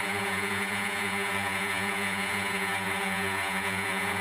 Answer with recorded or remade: remade